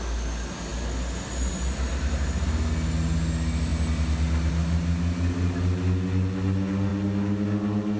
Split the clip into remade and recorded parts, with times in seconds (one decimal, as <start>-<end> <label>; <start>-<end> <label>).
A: 0.0-8.0 recorded

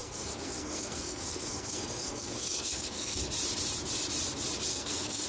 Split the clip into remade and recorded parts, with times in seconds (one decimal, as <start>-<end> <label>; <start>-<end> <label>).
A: 0.0-3.2 remade; 3.2-4.7 recorded; 4.7-5.3 remade

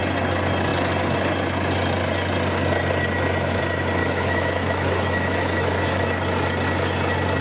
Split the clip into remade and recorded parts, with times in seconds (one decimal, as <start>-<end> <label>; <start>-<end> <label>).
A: 0.0-4.0 recorded; 4.0-6.0 remade; 6.0-7.4 recorded